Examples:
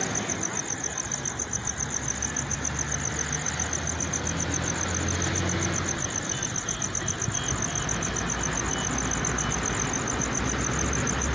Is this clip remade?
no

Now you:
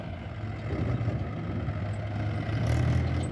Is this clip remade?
no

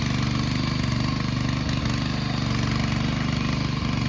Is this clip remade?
no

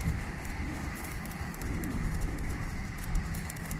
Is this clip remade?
yes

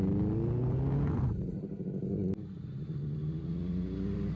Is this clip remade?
no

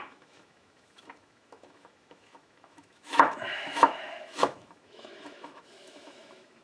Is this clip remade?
yes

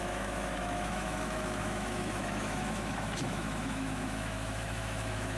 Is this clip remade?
yes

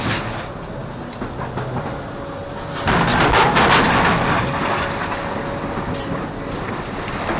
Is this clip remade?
no